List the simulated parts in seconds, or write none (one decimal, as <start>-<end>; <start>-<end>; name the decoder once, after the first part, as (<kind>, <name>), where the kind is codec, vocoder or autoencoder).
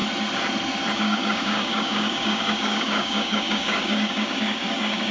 0.9-5.1 (codec, DAC)